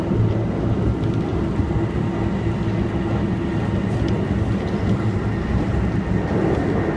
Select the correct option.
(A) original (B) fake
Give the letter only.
A